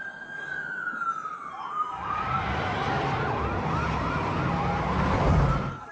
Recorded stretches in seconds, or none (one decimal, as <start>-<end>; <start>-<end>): 0.0-5.9